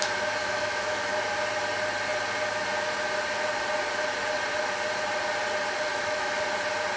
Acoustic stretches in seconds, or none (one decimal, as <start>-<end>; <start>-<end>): 0.0-0.4; 1.2-5.9; 6.4-7.0